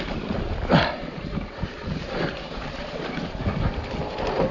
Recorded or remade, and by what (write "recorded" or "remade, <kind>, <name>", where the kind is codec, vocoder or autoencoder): recorded